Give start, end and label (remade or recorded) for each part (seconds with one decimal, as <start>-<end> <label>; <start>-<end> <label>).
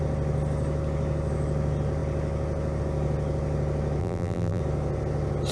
0.0-4.0 recorded; 4.0-4.6 remade; 4.6-5.5 recorded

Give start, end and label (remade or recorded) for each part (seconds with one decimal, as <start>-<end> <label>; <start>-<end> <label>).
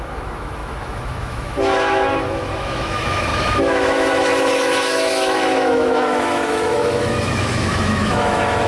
0.0-8.7 remade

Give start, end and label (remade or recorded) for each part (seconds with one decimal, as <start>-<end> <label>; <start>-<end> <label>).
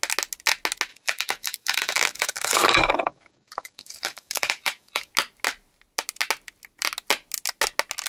0.0-0.9 recorded; 0.9-5.1 remade; 5.1-8.1 recorded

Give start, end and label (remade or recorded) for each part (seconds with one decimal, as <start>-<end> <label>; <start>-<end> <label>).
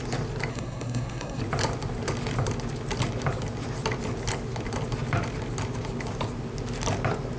0.0-0.5 recorded; 0.5-1.4 remade; 1.4-7.4 recorded